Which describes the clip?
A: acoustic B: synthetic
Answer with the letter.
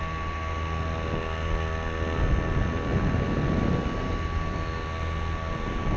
A